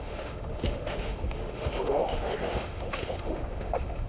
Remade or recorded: remade